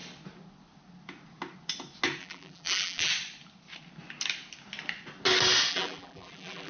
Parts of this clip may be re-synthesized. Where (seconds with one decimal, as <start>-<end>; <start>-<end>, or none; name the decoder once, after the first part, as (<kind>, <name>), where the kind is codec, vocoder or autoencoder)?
2.2-3.1 (vocoder, BigVGAN v2); 5.7-6.7

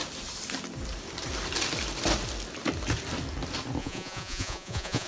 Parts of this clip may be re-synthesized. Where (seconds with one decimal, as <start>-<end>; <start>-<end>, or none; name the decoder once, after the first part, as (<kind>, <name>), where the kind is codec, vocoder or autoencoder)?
3.8-5.1 (vocoder, Vocos)

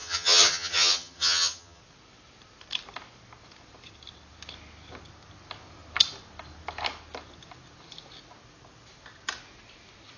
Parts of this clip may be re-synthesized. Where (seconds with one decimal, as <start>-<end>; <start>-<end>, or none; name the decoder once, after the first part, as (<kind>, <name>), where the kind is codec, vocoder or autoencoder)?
0.0-1.8 (vocoder, HiFi-GAN)